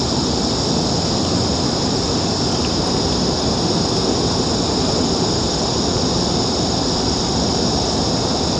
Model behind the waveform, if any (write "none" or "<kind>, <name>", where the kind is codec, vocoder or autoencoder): none